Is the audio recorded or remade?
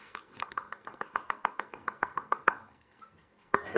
remade